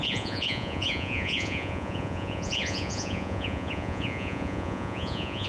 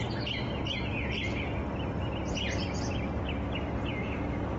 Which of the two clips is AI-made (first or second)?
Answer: first